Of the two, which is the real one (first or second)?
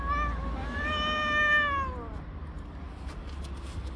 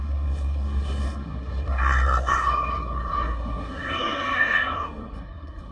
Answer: first